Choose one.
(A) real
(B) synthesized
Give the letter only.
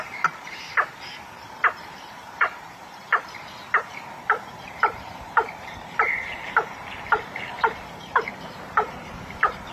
B